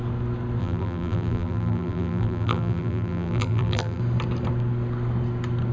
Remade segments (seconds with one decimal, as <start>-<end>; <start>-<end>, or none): 0.6-4.0